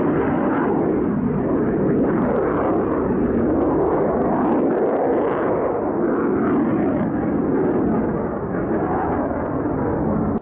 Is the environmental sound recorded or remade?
recorded